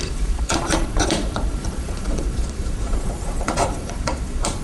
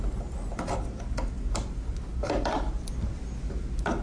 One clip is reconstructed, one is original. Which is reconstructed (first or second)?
first